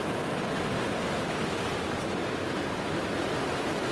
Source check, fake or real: real